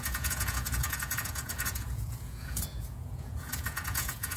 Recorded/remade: remade